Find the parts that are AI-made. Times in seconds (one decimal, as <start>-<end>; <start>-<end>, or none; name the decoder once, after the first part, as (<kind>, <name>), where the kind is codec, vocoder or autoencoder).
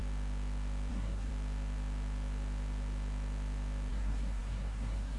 0.9-1.3 (codec, SNAC); 3.9-5.2